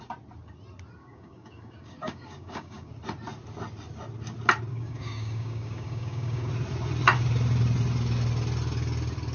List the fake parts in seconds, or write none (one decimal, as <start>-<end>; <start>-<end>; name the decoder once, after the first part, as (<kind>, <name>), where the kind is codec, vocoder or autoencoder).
1.0-2.9 (codec, DAC); 4.7-6.5